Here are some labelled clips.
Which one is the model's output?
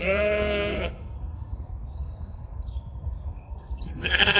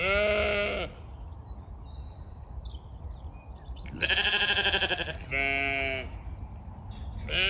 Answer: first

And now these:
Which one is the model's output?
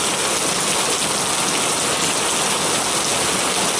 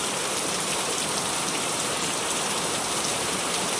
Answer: second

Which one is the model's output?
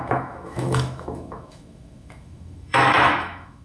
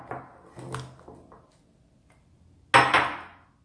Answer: first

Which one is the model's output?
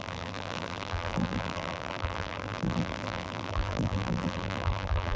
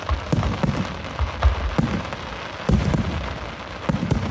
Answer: first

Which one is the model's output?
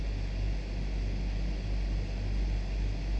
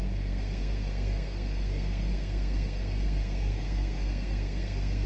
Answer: second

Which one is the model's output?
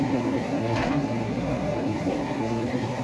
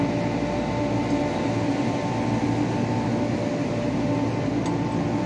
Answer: first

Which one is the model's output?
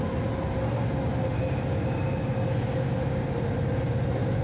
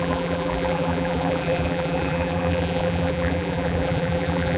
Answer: second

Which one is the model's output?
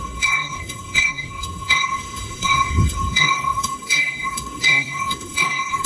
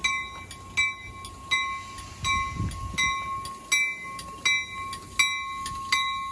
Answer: first